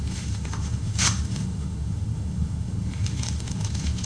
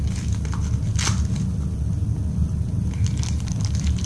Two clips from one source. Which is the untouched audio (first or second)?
second